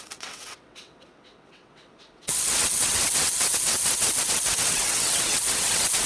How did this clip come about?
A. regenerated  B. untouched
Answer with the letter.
A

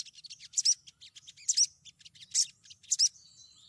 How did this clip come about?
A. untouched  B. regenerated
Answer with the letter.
A